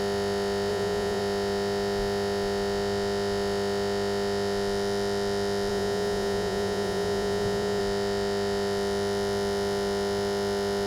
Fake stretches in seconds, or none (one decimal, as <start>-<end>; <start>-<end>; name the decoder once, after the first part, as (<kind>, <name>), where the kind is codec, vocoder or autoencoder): 0.7-1.2 (vocoder, Vocos); 5.7-7.8